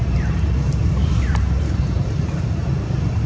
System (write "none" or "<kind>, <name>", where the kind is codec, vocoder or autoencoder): vocoder, BigVGAN v2